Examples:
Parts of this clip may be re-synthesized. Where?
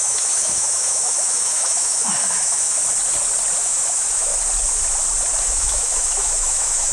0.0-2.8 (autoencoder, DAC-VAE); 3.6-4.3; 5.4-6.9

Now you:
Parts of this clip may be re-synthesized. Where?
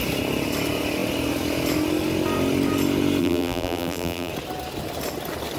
3.2-4.3 (vocoder, BigVGAN v2)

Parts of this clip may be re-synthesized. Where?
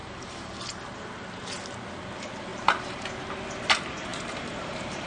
0.0-0.6 (vocoder, BigVGAN v2); 2.5-3.1; 4.1-5.1